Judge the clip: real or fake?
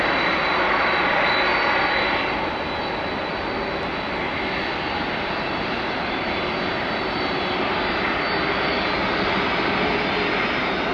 real